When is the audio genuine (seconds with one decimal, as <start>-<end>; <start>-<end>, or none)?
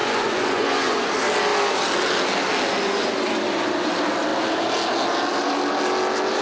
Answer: 1.1-6.4